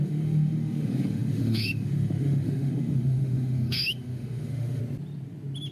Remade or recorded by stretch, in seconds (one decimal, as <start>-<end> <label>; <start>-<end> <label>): 0.0-4.8 remade; 4.8-5.7 recorded